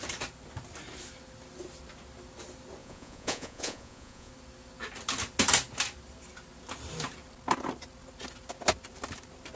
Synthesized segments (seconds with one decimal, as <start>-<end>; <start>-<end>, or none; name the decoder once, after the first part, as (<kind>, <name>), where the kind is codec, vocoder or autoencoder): 2.8-4.3 (vocoder, Vocos)